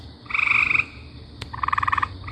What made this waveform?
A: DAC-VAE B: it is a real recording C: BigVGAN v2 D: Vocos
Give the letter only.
B